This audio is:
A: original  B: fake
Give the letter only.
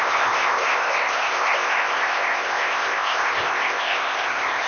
B